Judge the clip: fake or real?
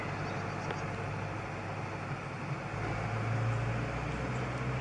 real